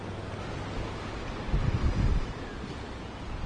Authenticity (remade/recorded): recorded